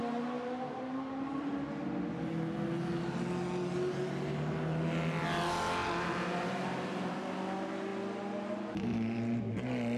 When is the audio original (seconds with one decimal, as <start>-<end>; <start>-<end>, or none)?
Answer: 1.5-5.8; 7.2-10.0